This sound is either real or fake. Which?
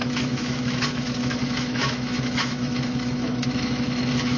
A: fake